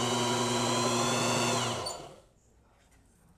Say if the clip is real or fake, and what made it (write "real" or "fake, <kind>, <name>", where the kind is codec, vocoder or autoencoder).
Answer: real